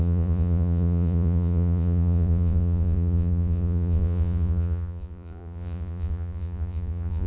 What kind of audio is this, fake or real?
fake